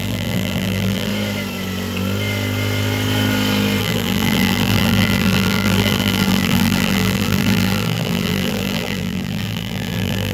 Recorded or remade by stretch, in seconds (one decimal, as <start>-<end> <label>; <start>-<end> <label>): 0.0-1.1 remade; 1.1-3.8 recorded; 3.8-10.3 remade